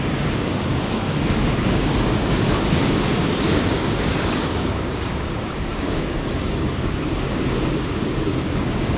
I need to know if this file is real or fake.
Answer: fake